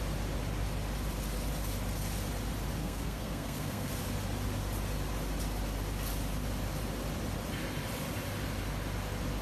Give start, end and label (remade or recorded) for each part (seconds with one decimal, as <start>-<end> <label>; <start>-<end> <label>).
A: 0.0-2.8 recorded; 2.8-3.9 remade; 3.9-9.4 recorded